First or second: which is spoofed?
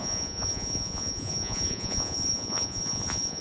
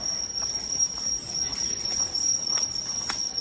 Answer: first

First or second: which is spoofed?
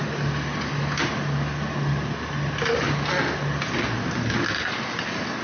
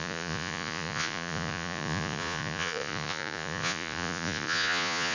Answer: second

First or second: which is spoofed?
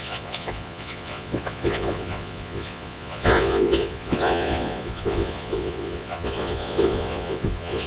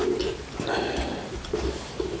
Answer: first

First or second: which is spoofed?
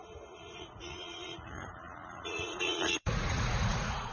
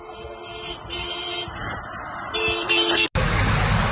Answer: first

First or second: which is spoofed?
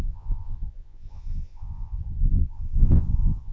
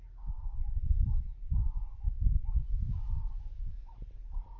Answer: first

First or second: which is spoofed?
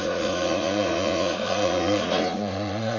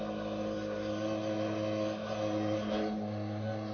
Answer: first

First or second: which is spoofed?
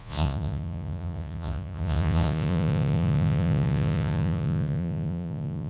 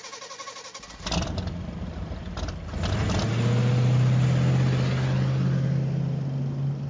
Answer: first